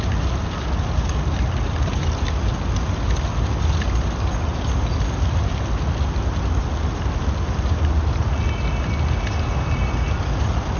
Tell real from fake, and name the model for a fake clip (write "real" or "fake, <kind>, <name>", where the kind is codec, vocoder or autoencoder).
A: real